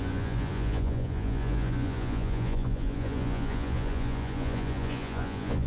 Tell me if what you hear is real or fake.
fake